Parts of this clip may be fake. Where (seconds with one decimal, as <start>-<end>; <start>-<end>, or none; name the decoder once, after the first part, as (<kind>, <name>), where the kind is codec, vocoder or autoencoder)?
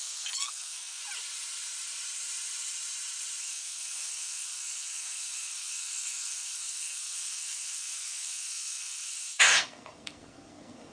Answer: 0.0-1.0 (codec, SNAC); 3.4-10.9